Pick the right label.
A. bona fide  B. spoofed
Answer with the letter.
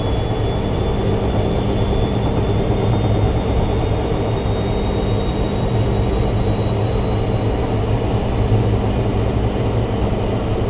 A